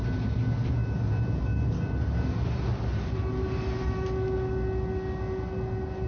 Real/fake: real